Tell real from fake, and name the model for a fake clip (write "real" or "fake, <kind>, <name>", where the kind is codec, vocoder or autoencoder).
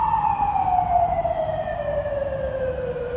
real